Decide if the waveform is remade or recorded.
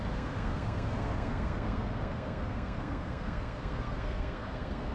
remade